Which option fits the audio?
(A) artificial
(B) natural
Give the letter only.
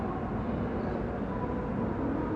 B